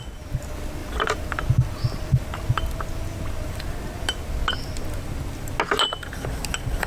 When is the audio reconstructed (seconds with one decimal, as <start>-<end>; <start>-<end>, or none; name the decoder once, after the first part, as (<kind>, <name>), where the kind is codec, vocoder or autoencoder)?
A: none